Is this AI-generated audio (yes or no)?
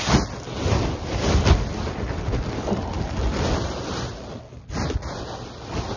no